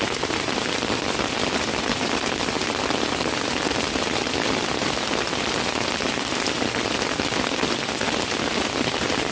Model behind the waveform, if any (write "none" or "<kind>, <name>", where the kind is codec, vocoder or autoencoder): none